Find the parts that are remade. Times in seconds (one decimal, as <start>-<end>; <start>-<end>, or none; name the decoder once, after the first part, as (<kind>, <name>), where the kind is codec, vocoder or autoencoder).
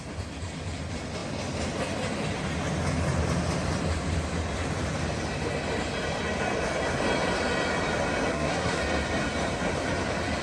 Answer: 8.3-8.8 (codec, SNAC)